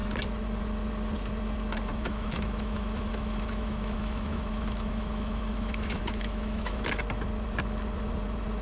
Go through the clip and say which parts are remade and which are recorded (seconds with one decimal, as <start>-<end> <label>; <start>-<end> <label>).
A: 0.0-1.9 recorded; 1.9-6.8 remade; 6.8-8.6 recorded